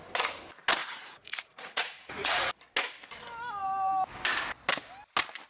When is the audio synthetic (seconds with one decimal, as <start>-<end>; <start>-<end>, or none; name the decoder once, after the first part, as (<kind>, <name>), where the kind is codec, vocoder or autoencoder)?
0.8-2.5 (vocoder, Vocos)